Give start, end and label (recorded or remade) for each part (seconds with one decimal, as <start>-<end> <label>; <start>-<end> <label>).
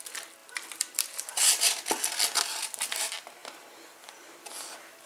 0.0-0.4 recorded; 0.4-1.6 remade; 1.6-5.1 recorded